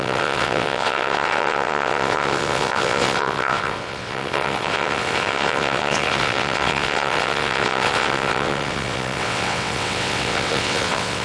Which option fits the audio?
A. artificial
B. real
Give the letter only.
A